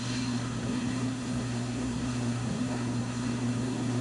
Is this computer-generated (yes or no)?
yes